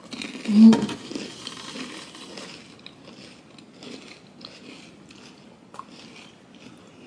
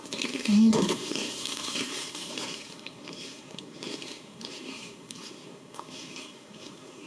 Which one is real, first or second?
first